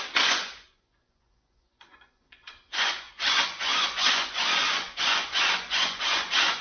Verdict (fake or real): fake